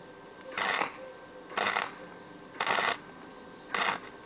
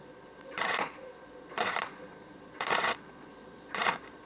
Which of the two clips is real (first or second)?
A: first